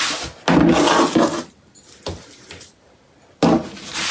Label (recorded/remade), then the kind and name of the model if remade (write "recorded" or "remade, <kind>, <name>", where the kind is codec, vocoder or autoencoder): recorded